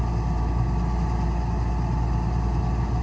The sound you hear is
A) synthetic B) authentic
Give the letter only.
B